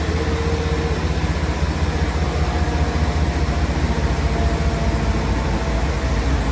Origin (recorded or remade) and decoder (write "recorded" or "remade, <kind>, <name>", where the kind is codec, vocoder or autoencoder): recorded